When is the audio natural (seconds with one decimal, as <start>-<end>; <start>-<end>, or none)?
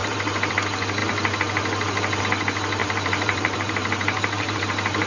0.5-2.8; 4.6-5.1